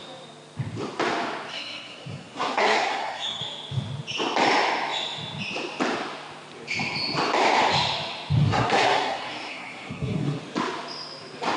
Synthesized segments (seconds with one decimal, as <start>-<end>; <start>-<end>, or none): 1.5-3.4; 8.4-10.4